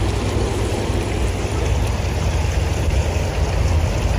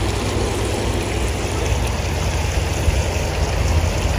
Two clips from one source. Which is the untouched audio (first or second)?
second